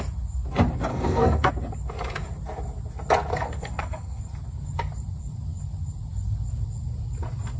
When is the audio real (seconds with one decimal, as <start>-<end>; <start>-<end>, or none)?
0.0-0.9; 1.5-3.3; 4.2-7.6